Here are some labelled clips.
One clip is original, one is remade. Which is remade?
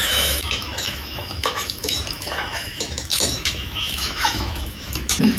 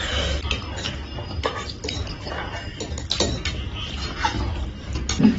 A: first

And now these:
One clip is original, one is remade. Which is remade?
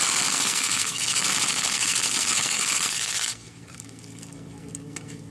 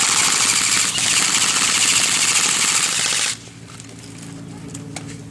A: first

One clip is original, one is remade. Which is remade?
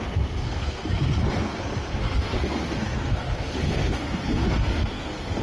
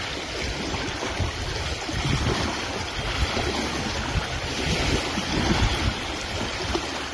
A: first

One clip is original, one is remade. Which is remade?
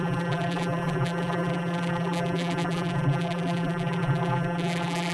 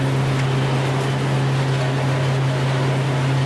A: first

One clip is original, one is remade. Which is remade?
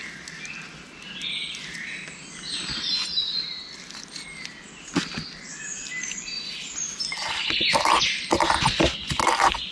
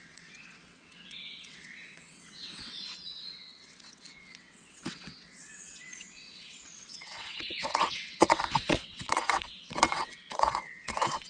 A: second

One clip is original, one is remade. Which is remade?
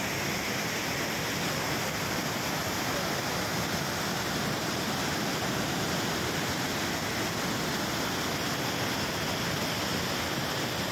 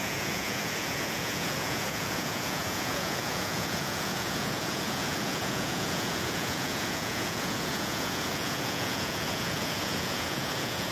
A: second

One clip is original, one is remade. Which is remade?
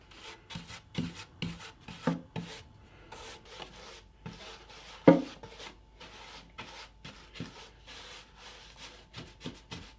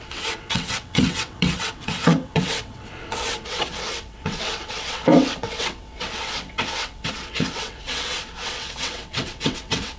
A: second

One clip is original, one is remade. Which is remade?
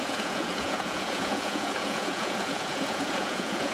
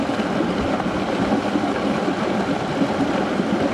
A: first